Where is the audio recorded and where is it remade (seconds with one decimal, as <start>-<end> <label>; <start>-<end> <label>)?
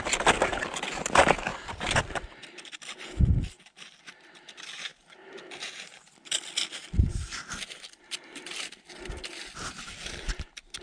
0.0-1.5 recorded; 1.5-4.1 remade; 4.1-6.8 recorded; 6.8-8.5 remade; 8.5-10.8 recorded